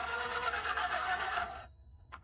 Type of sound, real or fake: fake